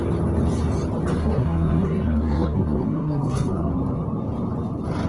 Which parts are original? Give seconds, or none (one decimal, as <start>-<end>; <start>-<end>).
0.0-1.2; 3.7-5.1